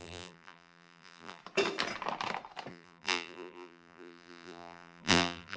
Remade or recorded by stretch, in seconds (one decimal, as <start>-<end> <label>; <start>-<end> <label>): 0.0-1.4 remade; 1.4-2.7 recorded; 2.7-5.6 remade